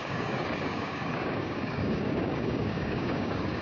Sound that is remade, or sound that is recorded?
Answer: remade